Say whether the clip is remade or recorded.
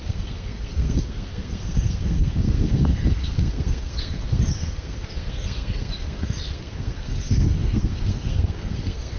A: remade